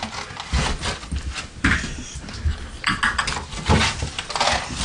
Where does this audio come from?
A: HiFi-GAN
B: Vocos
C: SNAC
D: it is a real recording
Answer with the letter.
D